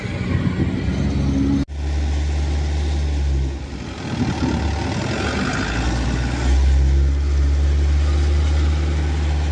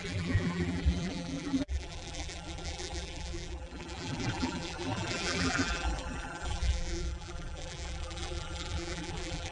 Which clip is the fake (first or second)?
second